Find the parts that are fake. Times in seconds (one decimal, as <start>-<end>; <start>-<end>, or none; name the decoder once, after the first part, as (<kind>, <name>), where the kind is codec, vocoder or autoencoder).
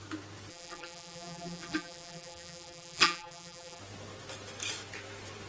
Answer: 0.5-3.8 (vocoder, BigVGAN v2)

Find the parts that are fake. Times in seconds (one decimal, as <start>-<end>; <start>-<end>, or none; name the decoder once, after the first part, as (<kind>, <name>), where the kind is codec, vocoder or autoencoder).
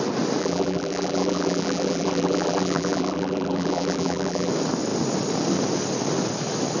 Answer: 0.4-4.5 (vocoder, BigVGAN v2)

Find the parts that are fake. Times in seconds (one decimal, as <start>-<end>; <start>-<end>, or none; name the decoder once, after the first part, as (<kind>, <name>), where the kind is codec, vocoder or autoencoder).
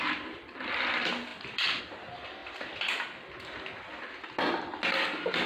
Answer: 0.0-2.4 (vocoder, BigVGAN v2)